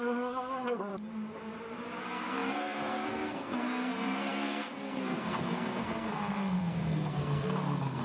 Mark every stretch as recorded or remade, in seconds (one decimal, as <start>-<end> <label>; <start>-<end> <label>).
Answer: 0.0-0.9 remade; 0.9-2.0 recorded; 2.0-8.0 remade